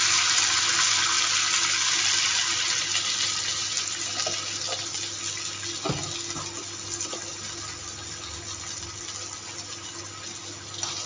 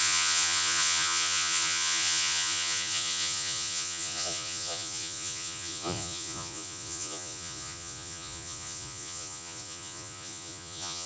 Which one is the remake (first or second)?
second